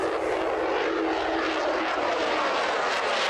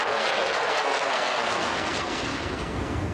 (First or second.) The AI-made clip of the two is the second